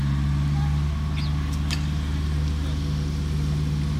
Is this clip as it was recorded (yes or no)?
yes